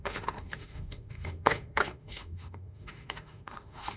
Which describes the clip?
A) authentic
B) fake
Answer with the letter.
B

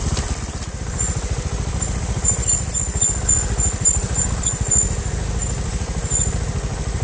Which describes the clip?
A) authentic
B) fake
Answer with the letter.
A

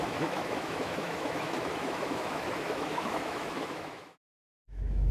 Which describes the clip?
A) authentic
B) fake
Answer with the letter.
B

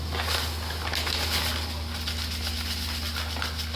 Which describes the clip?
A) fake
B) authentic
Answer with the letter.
B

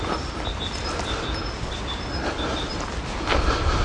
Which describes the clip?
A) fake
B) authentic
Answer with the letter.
B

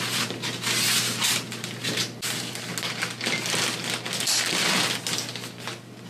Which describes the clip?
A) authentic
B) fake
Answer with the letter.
A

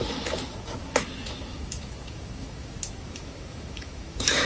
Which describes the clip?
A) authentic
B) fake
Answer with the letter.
B